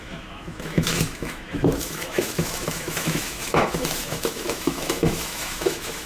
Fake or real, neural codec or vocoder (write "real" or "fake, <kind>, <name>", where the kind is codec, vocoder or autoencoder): fake, autoencoder, DAC-VAE